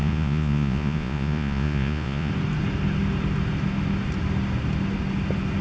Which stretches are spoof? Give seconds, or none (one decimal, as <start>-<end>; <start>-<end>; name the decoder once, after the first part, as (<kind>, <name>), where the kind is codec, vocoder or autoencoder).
0.0-2.3 (vocoder, Vocos)